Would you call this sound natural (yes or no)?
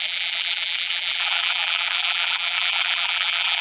no